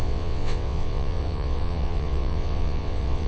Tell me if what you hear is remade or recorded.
remade